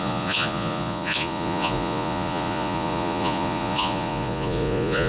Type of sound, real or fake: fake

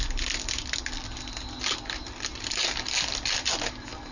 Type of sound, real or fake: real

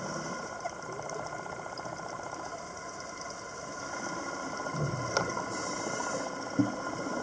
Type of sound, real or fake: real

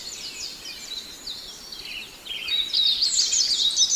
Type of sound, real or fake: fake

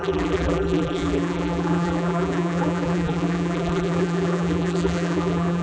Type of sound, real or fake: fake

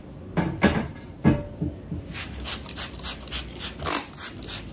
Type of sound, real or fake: real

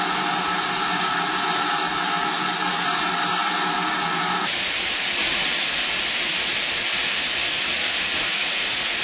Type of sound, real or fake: real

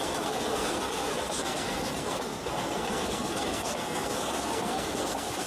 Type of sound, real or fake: fake